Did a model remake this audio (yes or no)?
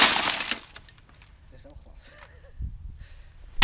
no